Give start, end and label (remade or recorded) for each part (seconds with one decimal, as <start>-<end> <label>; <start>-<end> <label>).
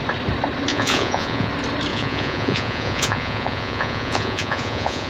0.0-0.7 recorded; 0.7-1.5 remade; 1.5-1.9 recorded; 1.9-5.1 remade